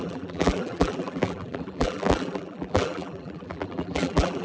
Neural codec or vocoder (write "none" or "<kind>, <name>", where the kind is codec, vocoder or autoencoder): vocoder, BigVGAN v2